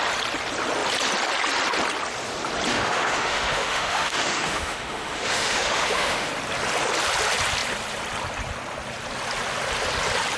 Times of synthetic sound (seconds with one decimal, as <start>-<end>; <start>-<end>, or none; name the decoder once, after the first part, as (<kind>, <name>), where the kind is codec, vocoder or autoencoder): 2.7-6.3 (autoencoder, DAC-VAE)